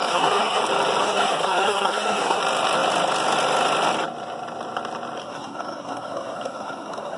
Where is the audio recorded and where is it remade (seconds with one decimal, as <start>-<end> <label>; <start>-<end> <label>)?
0.0-0.6 remade; 0.6-1.0 recorded; 1.0-2.4 remade; 2.4-5.2 recorded; 5.2-7.2 remade